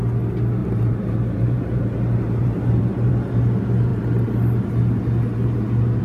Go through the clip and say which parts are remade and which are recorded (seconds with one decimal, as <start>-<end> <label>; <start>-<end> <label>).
0.0-0.6 recorded; 0.6-1.8 remade; 1.8-2.4 recorded; 2.4-3.1 remade; 3.1-6.0 recorded